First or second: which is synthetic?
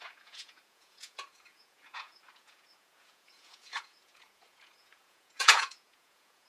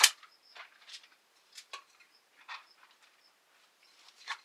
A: first